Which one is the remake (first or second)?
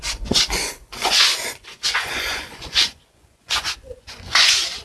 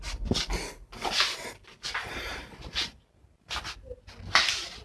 first